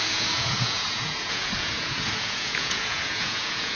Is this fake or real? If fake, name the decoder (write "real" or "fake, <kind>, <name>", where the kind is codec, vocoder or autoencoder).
fake, vocoder, Vocos